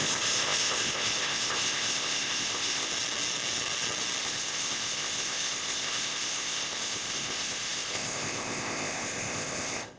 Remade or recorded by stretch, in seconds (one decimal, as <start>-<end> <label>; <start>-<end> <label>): 0.0-2.9 remade; 2.9-4.2 recorded; 4.2-10.0 remade